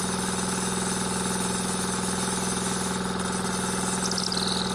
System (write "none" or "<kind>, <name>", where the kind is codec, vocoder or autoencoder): none